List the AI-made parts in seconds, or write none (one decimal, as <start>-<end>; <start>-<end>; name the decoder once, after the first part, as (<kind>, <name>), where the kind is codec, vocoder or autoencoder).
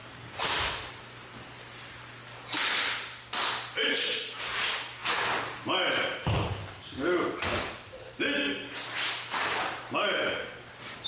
3.9-4.4 (codec, SNAC)